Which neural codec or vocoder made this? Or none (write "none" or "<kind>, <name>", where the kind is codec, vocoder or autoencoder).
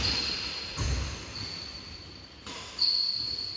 vocoder, BigVGAN v2